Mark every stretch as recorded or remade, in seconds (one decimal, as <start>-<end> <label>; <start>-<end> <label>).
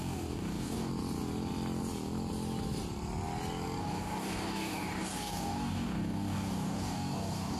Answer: 0.0-0.9 remade; 0.9-3.8 recorded; 3.8-7.6 remade